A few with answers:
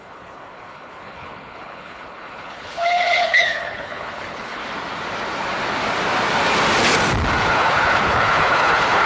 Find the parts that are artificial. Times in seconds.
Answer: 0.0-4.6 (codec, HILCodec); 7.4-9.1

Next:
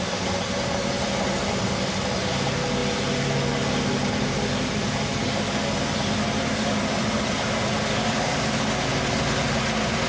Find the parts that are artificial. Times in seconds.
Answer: none

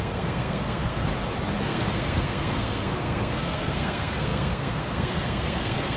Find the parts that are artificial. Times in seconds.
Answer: 0.0-1.1 (codec, SNAC); 1.6-6.0

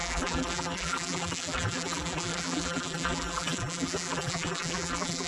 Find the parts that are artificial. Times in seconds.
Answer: 0.0-5.3 (vocoder, BigVGAN v2)

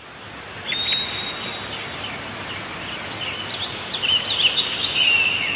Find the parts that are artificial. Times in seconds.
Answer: none